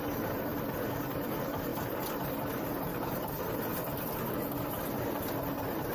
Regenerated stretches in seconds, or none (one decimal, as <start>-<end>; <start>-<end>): 0.0-0.5; 1.0-3.7; 5.5-5.9